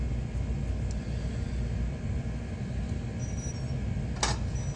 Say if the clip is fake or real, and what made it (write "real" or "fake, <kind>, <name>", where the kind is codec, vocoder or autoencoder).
real